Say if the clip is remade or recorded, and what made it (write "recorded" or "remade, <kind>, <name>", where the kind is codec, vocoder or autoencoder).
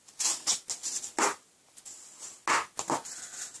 recorded